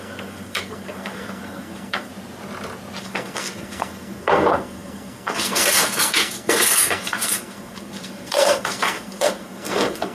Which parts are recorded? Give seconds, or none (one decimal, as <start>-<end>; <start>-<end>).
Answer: 2.1-3.0